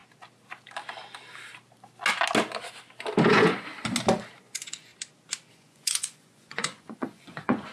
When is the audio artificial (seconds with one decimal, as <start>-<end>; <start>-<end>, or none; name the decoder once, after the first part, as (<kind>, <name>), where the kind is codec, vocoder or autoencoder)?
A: 3.3-3.7 (vocoder, Vocos); 4.4-4.9; 5.5-7.7